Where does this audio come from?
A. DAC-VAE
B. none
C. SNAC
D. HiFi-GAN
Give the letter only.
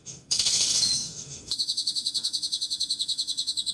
A